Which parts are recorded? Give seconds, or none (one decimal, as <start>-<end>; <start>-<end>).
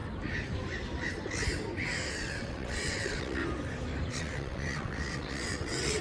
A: 0.0-2.1; 3.4-4.1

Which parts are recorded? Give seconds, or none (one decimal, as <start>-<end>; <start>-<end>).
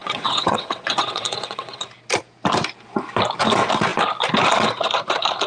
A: 1.8-5.5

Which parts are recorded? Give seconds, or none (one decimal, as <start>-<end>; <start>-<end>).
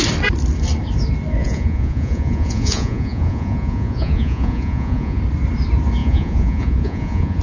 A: 0.0-1.4; 5.2-6.0